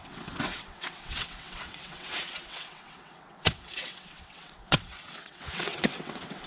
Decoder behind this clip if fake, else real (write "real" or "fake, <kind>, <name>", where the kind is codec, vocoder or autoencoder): fake, vocoder, WaveNeXt